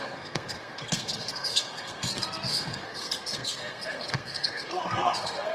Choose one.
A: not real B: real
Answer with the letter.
A